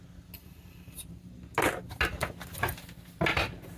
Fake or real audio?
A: real